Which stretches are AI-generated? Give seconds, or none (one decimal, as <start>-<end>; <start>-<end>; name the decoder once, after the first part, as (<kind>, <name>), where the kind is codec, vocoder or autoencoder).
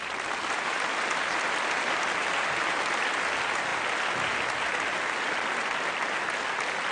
none